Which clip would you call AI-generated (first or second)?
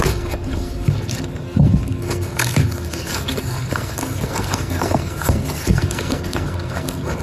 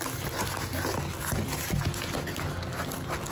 first